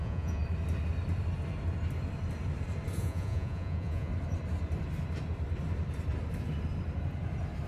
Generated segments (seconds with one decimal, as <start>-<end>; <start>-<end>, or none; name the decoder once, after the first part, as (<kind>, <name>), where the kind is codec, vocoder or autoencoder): 0.0-0.4 (vocoder, Vocos); 3.0-4.1